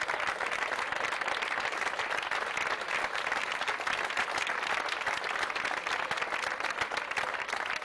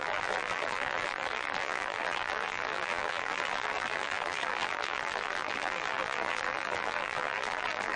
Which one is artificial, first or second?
second